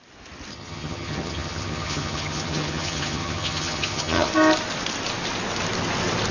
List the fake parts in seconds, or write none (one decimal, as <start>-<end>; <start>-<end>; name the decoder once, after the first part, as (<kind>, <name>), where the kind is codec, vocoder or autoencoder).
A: 0.5-4.3 (vocoder, HiFi-GAN)